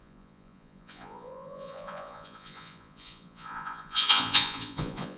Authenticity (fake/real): fake